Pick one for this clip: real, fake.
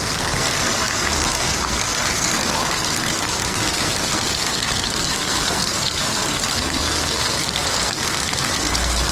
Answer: fake